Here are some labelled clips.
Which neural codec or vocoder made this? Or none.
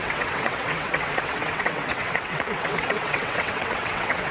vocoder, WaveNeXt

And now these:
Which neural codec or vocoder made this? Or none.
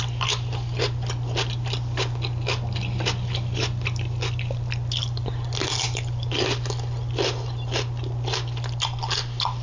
none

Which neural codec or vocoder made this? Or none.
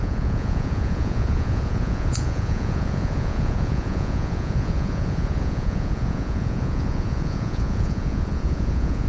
vocoder, Vocos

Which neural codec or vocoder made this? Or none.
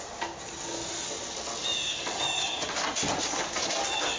none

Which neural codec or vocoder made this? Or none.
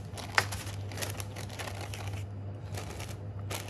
none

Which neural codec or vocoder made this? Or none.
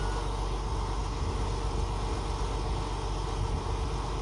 none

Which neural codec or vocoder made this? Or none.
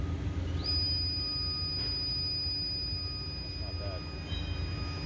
none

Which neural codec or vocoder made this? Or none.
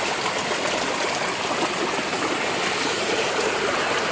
none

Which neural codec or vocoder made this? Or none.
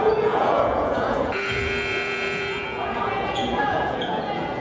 vocoder, Vocos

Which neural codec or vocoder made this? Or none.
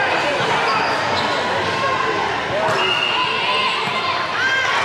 none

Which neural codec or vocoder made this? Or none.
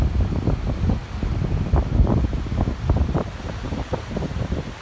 none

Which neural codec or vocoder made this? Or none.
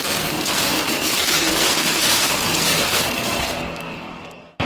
codec, SNAC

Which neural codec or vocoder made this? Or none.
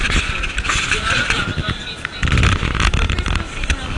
none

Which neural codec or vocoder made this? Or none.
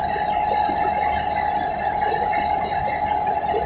none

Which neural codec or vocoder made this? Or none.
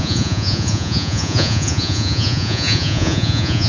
vocoder, Vocos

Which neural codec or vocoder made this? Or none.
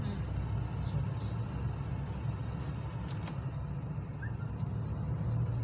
none